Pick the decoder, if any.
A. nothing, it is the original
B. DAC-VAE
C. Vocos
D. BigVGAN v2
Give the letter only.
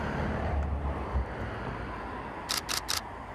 A